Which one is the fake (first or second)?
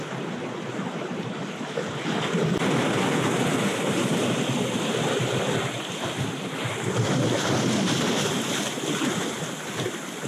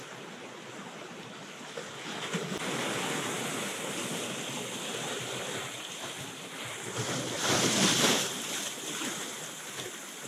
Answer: first